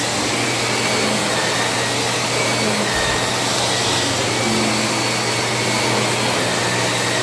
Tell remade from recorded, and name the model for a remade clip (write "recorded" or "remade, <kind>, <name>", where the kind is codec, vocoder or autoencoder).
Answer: recorded